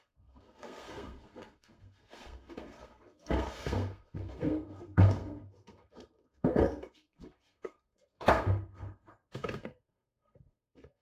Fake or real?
fake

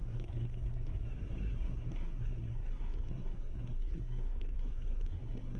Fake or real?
fake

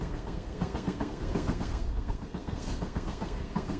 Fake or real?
fake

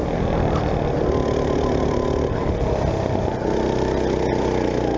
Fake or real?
real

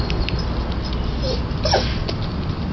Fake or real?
real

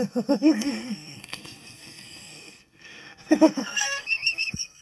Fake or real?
fake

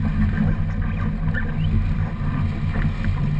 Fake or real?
real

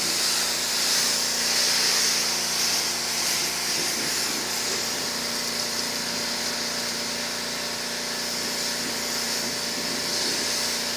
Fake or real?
real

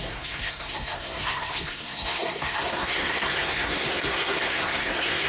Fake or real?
fake